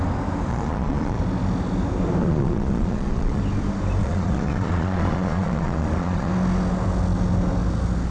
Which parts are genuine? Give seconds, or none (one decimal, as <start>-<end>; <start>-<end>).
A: 0.0-0.5; 1.2-2.2; 3.4-4.0; 6.3-8.1